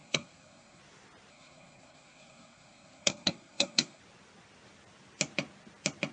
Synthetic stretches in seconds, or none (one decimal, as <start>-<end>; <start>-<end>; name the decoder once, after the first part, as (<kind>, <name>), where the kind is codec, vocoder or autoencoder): 0.0-0.8 (codec, SNAC); 1.3-4.0